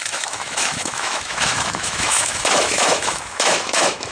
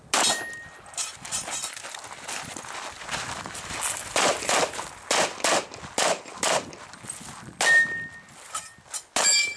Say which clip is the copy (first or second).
first